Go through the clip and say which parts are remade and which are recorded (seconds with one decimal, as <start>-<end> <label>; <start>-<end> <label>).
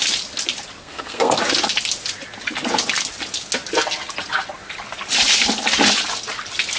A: 0.0-0.8 recorded; 0.8-1.4 remade; 1.4-6.8 recorded